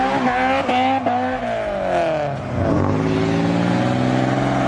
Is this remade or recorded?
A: recorded